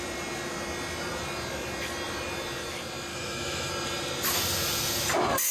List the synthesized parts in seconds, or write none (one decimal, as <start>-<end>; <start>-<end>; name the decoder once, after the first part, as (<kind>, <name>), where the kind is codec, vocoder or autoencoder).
3.1-3.7 (autoencoder, DAC-VAE)

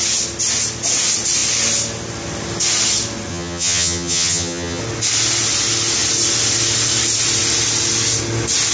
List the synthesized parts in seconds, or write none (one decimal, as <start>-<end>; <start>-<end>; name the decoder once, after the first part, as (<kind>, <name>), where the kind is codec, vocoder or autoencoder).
3.3-4.8 (vocoder, HiFi-GAN)

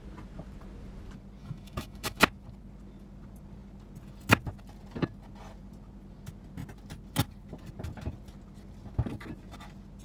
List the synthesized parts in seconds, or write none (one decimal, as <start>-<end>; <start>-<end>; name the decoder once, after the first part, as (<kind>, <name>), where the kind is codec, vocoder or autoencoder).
1.4-2.2 (autoencoder, DAC-VAE)

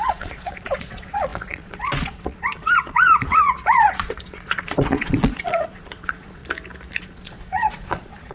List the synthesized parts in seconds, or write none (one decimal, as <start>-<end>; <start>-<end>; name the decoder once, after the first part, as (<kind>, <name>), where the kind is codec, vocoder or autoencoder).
0.0-6.4 (vocoder, Vocos); 7.0-8.3